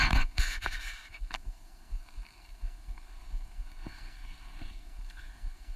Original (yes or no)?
no